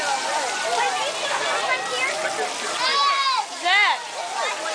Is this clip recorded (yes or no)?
yes